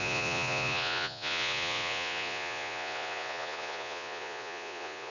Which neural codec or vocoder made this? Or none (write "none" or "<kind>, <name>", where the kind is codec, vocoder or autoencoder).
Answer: vocoder, Vocos